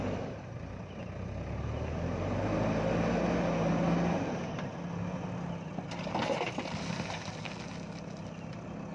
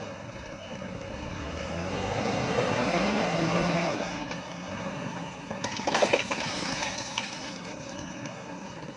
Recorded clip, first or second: first